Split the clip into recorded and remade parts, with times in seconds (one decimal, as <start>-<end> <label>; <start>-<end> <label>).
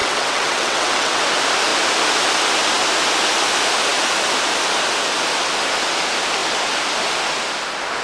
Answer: 0.0-1.2 remade; 1.2-8.0 recorded